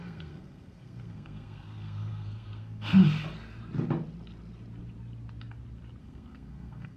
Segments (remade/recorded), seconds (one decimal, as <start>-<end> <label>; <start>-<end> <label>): 0.0-3.0 remade; 3.0-6.0 recorded; 6.0-7.0 remade